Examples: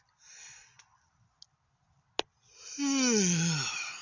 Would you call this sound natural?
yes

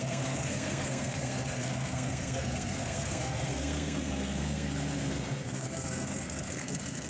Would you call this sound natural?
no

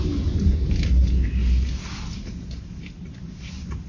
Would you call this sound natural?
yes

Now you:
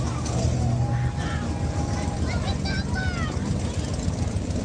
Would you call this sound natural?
yes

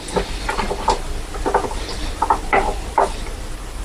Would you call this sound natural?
yes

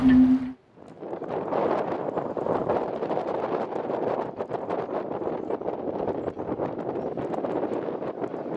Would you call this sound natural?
yes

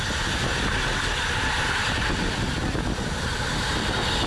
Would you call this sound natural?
yes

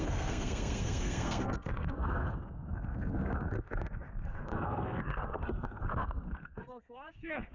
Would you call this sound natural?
no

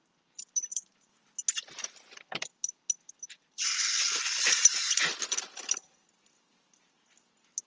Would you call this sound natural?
yes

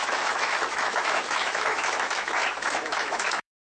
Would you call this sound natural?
no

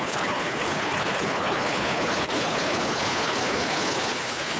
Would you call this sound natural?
no